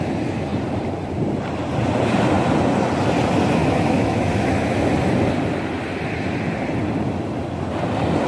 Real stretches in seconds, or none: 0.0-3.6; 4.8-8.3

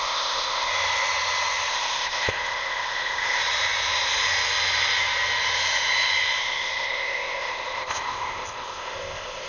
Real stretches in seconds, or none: 0.7-1.7; 3.4-6.4

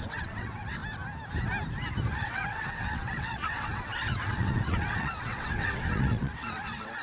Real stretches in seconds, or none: 0.8-2.1

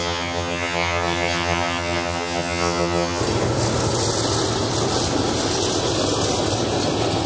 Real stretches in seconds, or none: 3.2-7.3

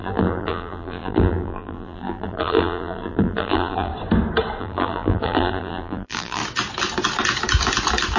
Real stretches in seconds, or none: 3.9-4.6; 6.4-8.2

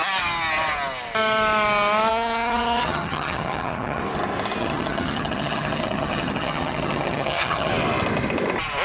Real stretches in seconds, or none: 0.0-2.1; 4.0-4.6; 7.7-8.8